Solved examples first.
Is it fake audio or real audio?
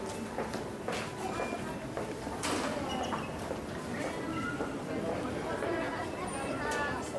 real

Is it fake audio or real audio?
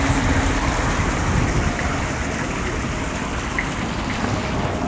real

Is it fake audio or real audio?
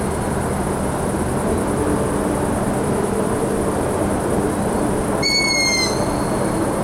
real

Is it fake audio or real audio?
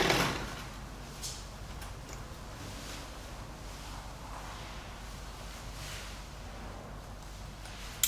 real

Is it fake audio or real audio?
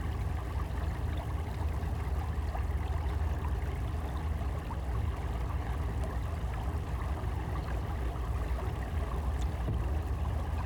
real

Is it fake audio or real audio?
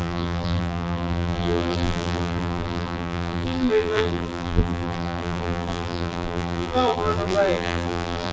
fake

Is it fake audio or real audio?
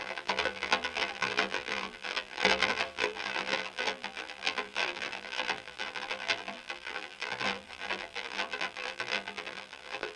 fake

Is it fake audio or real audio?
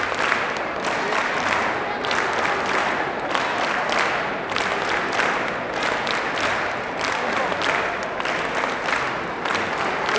real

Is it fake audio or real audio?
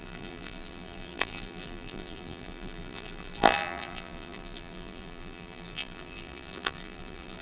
fake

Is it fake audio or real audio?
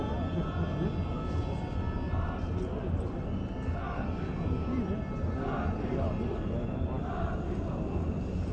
real